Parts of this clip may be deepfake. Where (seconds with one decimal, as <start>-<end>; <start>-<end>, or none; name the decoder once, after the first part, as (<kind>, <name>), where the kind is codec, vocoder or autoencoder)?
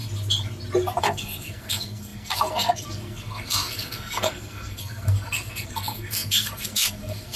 1.0-7.4 (codec, SNAC)